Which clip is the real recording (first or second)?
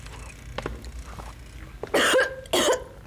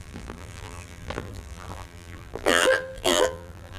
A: first